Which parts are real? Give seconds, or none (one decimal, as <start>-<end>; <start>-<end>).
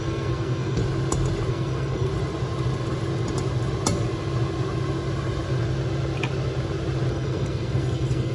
0.8-1.5; 2.1-7.1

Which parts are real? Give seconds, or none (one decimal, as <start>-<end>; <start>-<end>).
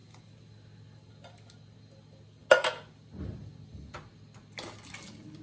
0.0-5.4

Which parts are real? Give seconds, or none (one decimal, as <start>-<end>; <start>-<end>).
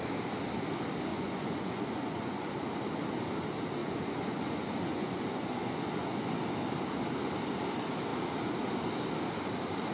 0.0-1.1; 2.5-3.8; 6.3-9.9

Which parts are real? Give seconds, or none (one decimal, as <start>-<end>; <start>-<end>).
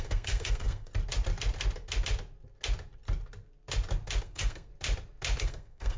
0.9-4.2; 4.7-5.4